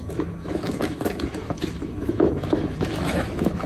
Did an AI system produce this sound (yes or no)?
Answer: yes